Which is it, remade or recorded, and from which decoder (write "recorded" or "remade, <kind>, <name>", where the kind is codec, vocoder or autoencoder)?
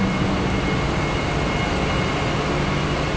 recorded